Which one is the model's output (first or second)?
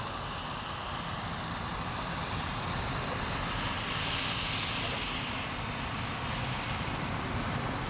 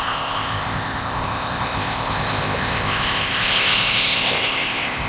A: second